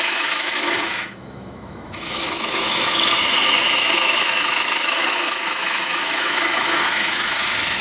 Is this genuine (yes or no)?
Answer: no